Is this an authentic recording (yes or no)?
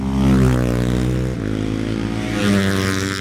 yes